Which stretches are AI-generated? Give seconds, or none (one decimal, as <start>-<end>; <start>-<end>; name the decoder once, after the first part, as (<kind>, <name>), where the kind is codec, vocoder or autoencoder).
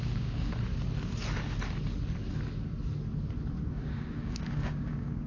0.0-0.5 (codec, DAC); 3.7-5.3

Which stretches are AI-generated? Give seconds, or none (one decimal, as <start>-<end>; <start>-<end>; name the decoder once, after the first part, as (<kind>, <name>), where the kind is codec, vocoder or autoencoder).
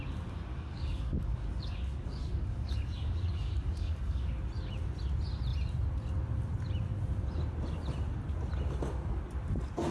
0.5-4.3 (codec, DAC)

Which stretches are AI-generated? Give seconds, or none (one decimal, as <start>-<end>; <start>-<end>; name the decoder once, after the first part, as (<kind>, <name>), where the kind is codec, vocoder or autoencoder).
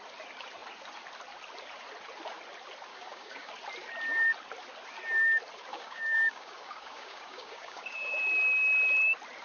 2.9-3.5 (codec, DAC); 5.7-8.1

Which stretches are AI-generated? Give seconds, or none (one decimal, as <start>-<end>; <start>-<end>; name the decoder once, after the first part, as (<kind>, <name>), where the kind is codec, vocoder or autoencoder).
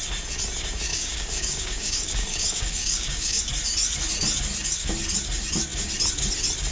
0.9-3.4 (codec, DAC)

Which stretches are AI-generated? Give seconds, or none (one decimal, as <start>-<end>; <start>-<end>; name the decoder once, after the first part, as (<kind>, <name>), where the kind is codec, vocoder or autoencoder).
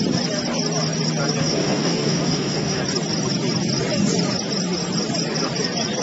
1.4-2.8 (codec, DAC)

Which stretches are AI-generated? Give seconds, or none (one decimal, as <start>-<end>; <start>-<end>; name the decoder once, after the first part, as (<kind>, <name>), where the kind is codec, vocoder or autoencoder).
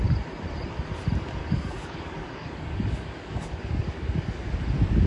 1.4-4.5 (codec, DAC)